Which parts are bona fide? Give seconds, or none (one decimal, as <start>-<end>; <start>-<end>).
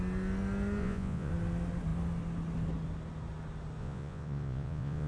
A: 0.0-0.8; 1.3-3.8